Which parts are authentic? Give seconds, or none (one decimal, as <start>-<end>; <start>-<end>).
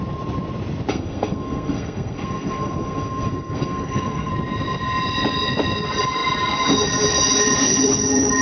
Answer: 0.0-0.9; 4.3-8.4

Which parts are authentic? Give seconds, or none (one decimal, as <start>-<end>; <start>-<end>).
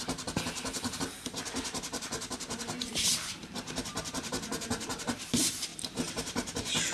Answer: none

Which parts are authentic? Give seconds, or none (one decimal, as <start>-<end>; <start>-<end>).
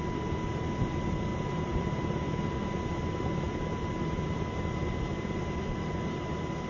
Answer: 0.0-6.7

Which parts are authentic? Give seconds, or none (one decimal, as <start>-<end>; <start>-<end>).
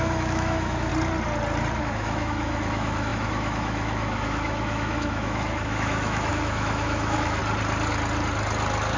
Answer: 0.9-1.8; 7.4-9.0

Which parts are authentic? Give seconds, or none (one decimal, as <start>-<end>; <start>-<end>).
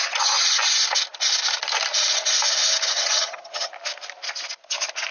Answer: 0.6-2.9; 3.7-5.1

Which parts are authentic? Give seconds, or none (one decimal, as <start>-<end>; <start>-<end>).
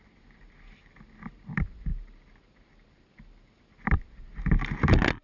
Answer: 0.0-5.2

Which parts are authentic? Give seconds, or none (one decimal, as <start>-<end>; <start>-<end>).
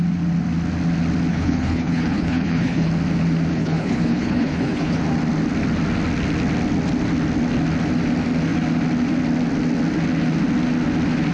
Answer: 0.0-1.3; 2.9-3.5; 5.0-11.3